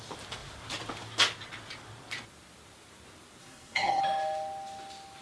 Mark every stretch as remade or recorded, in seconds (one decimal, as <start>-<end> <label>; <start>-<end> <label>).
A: 0.0-3.4 recorded; 3.4-4.0 remade; 4.0-5.2 recorded